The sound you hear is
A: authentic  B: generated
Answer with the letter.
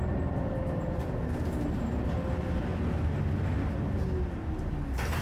A